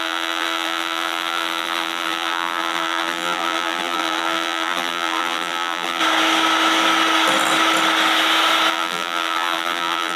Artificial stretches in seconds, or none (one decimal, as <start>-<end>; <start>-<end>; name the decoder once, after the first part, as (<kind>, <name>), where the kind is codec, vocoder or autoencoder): 0.0-6.0 (vocoder, BigVGAN v2); 8.7-10.2